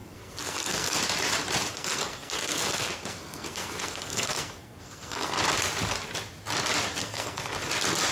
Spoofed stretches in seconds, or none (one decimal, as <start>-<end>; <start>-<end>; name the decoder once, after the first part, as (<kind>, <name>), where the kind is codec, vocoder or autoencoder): 0.0-1.0 (codec, SNAC); 1.7-5.4; 7.0-7.6